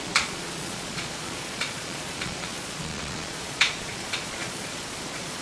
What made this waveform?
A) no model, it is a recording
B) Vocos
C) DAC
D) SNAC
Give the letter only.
B